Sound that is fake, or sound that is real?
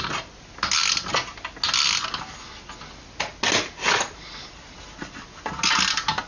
real